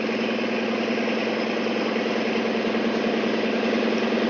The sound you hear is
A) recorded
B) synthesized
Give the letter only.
A